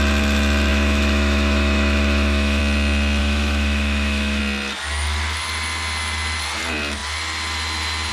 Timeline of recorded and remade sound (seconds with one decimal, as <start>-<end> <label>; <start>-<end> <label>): 0.0-0.7 recorded; 0.7-2.6 remade; 2.6-3.2 recorded; 3.2-4.4 remade; 4.4-8.1 recorded